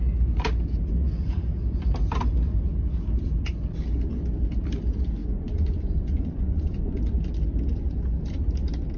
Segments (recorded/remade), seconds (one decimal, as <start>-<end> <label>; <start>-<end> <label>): 0.0-5.2 recorded; 5.2-7.0 remade; 7.0-9.0 recorded